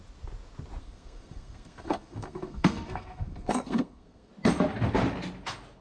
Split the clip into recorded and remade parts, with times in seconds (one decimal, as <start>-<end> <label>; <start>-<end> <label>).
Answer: 0.0-0.8 recorded; 0.8-4.3 remade; 4.3-5.8 recorded